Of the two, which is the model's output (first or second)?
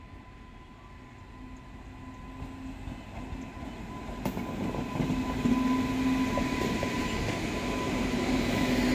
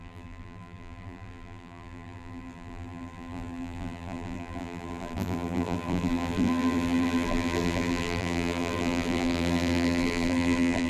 second